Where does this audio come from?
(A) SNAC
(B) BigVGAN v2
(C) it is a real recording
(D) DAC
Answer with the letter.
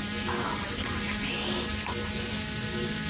C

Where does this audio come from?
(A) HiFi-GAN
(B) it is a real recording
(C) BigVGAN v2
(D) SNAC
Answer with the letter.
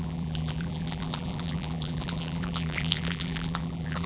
C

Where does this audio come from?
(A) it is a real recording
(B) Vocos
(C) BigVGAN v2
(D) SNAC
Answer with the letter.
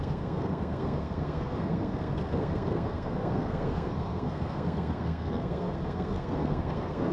D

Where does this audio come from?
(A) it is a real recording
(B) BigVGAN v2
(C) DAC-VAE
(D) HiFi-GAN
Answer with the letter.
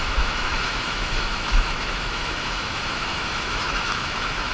C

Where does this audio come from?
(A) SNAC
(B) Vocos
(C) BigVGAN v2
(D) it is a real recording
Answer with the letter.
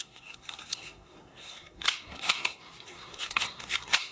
A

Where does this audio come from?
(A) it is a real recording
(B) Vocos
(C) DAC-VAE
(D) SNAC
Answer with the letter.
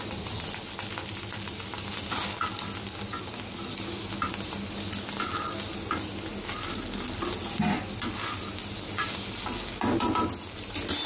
A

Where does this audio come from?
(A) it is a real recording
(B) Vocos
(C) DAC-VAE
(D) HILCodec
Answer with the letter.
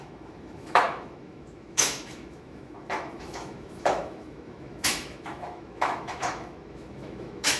C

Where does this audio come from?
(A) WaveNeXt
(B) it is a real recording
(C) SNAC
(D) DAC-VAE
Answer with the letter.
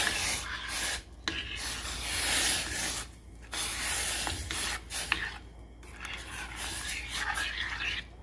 B